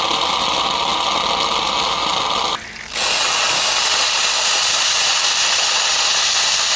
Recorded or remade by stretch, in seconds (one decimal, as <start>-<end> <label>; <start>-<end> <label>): 0.0-6.8 recorded